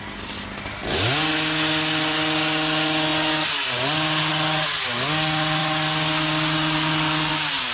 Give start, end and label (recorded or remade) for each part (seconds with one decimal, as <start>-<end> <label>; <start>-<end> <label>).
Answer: 0.0-7.7 recorded